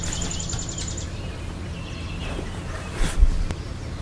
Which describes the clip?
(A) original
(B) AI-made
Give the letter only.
A